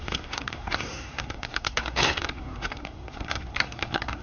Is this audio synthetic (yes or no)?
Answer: yes